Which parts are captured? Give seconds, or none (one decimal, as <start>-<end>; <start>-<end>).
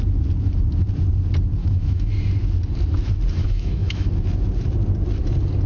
0.0-1.6; 2.1-3.4; 4.1-5.7